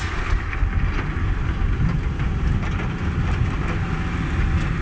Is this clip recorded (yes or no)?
yes